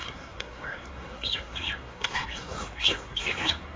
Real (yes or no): no